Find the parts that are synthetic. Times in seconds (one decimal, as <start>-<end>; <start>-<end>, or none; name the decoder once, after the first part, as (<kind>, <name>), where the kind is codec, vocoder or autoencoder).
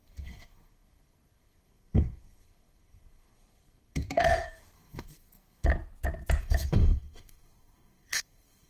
0.0-5.7 (codec, SNAC); 6.4-8.7